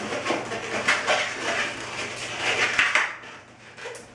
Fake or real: real